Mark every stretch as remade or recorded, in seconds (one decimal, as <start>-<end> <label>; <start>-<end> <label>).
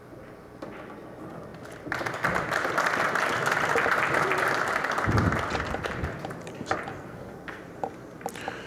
0.0-6.9 recorded; 6.9-7.6 remade; 7.6-8.7 recorded